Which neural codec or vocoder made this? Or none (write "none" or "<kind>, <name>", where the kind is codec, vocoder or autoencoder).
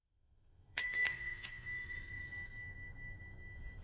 autoencoder, DAC-VAE